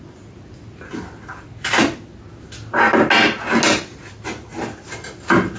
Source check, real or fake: real